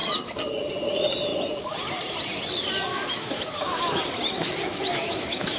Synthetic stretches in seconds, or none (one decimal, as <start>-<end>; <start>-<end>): 2.9-4.0; 4.4-5.6